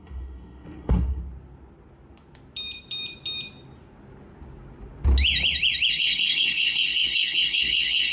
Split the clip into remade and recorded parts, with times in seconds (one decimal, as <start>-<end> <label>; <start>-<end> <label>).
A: 0.0-1.2 remade; 1.2-5.9 recorded; 5.9-8.1 remade